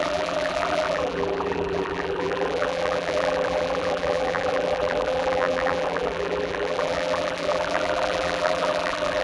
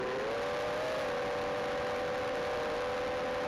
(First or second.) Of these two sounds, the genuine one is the second